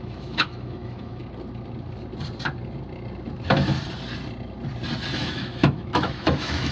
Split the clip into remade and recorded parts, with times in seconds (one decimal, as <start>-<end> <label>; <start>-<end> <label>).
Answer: 0.0-1.2 remade; 1.2-5.2 recorded; 5.2-6.7 remade

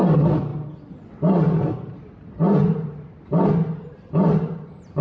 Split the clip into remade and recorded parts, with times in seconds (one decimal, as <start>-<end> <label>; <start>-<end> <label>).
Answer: 0.0-5.0 recorded

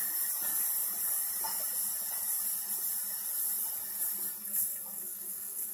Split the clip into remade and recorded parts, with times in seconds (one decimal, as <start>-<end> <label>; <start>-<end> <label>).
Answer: 0.0-4.4 recorded; 4.4-5.7 remade

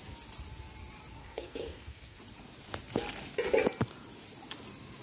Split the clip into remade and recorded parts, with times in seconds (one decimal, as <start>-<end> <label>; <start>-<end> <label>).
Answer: 0.0-1.2 recorded; 1.2-2.2 remade; 2.2-5.0 recorded

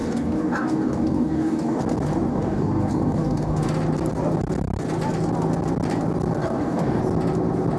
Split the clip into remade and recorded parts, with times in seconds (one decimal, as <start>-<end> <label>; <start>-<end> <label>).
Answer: 0.0-1.8 remade; 1.8-2.3 recorded; 2.3-3.7 remade; 3.7-6.4 recorded; 6.4-7.0 remade; 7.0-7.8 recorded

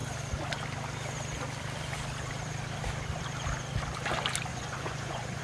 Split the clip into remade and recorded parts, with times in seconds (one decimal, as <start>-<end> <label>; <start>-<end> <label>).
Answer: 0.0-4.5 recorded; 4.5-5.4 remade

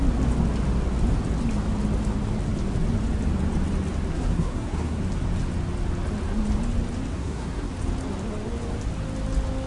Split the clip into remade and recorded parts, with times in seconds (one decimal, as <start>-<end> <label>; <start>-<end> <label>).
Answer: 0.0-4.1 recorded; 4.1-5.0 remade; 5.0-7.1 recorded; 7.1-7.7 remade; 7.7-9.7 recorded

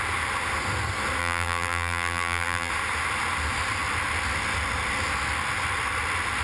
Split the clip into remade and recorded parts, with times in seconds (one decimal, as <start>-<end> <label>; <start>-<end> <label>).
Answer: 0.0-1.2 recorded; 1.2-2.7 remade; 2.7-6.4 recorded